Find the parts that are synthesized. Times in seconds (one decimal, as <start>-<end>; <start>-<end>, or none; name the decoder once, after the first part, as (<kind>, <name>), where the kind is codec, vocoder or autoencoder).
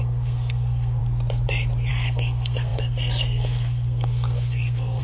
0.0-1.0 (codec, SNAC); 1.9-5.0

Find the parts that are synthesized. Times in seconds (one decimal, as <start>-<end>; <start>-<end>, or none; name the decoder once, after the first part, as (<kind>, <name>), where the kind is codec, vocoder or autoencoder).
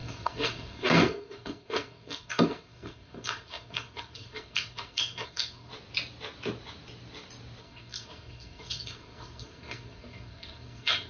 0.0-5.7 (codec, SNAC); 7.6-11.1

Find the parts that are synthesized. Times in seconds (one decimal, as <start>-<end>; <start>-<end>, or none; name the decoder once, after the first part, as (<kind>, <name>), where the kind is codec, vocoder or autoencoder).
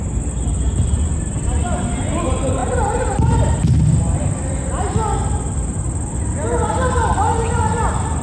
none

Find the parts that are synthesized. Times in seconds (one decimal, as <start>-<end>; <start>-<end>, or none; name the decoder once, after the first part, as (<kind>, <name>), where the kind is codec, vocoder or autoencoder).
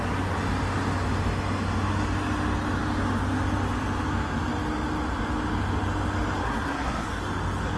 6.4-7.1 (codec, SNAC)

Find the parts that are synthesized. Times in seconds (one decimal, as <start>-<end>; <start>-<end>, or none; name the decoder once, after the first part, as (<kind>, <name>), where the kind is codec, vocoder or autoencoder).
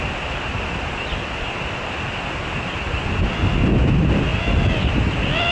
none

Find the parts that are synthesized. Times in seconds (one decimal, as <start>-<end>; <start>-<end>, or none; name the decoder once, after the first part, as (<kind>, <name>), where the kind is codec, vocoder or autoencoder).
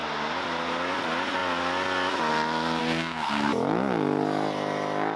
2.8-3.5 (codec, SNAC)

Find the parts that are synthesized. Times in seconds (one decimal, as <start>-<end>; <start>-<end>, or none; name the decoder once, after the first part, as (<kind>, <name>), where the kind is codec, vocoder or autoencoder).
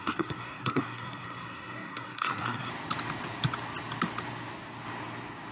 0.0-2.7 (codec, SNAC)